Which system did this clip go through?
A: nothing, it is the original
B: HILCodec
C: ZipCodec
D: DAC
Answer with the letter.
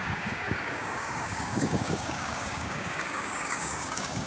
D